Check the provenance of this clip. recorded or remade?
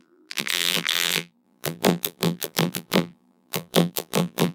remade